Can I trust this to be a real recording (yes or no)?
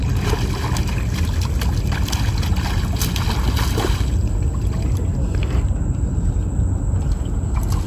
yes